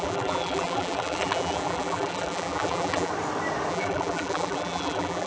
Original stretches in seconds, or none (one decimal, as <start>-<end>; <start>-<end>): 3.1-3.7